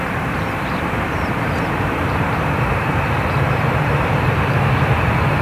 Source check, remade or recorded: remade